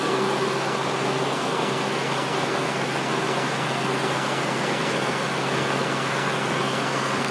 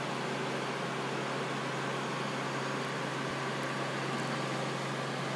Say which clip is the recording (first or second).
second